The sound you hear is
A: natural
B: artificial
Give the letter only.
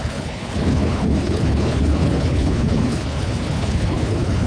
B